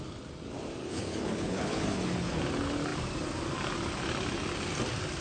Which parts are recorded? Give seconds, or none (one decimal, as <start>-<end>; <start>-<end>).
0.0-0.8; 2.4-5.2